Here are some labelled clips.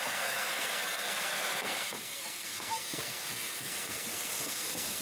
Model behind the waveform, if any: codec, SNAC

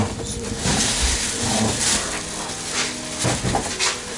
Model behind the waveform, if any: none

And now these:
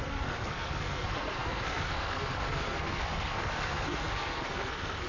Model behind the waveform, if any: codec, SNAC